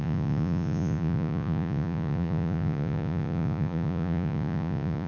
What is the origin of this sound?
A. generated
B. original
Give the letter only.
A